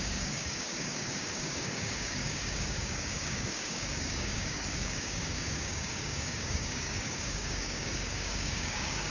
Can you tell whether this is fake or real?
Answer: fake